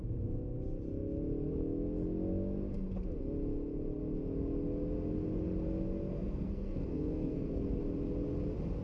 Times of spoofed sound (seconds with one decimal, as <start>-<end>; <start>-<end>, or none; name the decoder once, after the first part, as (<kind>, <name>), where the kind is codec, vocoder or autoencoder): 6.1-7.8 (codec, SNAC)